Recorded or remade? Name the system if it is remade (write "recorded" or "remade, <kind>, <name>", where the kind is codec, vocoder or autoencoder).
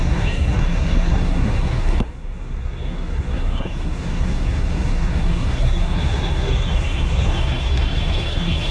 remade, codec, SNAC